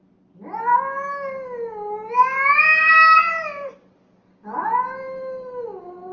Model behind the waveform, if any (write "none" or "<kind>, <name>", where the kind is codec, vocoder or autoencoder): none